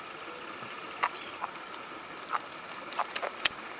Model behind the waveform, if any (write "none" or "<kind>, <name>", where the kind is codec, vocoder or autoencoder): none